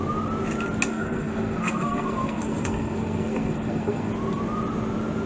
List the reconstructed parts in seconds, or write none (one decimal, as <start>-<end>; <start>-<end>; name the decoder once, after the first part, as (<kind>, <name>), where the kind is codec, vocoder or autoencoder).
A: 0.9-4.1 (codec, SNAC)